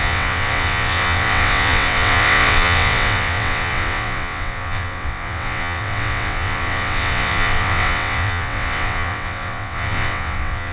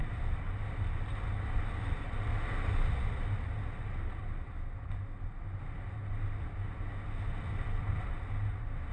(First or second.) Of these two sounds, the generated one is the first